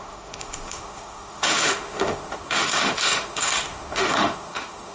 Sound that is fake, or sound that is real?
fake